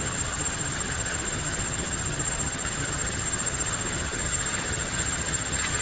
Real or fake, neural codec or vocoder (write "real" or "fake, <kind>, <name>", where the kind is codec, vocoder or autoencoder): fake, vocoder, HiFi-GAN